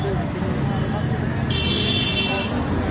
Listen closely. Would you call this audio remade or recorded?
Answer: recorded